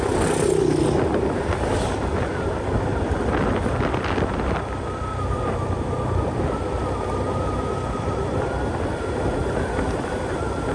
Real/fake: real